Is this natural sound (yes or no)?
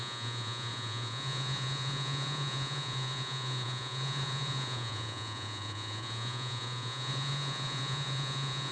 no